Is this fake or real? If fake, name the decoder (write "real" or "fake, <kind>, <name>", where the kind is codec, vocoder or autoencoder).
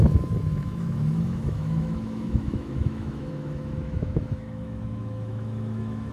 fake, autoencoder, DAC-VAE